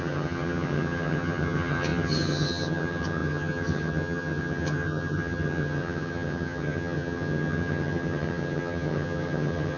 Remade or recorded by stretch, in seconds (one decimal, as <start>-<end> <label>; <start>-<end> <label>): 0.0-9.8 remade